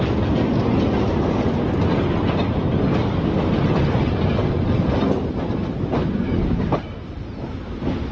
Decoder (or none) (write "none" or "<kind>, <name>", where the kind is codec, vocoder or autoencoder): none